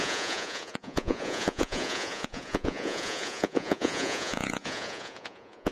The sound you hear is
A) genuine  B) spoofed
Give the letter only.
B